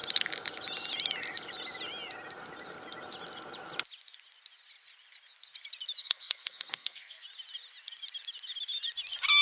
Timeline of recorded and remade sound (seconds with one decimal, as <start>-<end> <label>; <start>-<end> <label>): 0.0-6.0 recorded; 6.0-7.2 remade; 7.2-9.4 recorded